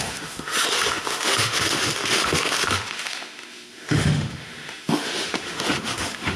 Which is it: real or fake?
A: fake